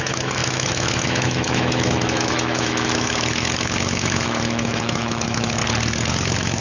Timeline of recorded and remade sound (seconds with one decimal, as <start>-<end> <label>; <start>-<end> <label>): 0.0-5.6 remade; 5.6-6.1 recorded; 6.1-6.6 remade